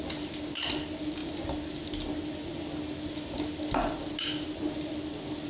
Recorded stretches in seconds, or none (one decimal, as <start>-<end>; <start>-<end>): 0.0-5.5

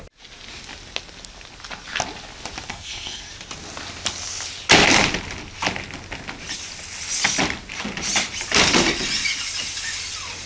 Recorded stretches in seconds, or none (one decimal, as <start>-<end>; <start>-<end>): 0.0-2.7; 3.3-10.5

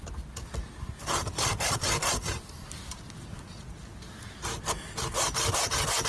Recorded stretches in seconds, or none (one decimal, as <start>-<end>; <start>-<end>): 0.0-1.2; 2.6-6.1